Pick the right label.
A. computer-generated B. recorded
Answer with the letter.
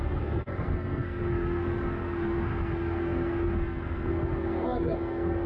A